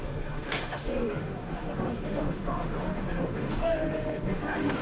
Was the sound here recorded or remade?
remade